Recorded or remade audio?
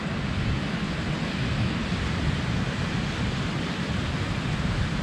recorded